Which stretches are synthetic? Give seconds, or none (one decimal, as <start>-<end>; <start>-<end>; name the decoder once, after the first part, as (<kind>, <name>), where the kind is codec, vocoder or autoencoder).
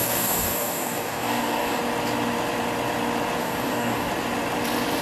0.0-1.8 (codec, DAC); 3.4-4.1